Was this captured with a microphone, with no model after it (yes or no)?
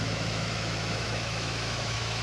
no